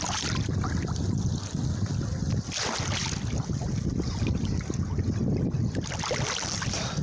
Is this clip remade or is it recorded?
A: recorded